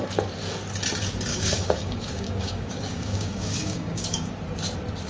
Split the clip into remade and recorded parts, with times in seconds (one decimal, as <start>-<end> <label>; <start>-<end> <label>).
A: 0.0-1.3 recorded; 1.3-4.3 remade; 4.3-5.1 recorded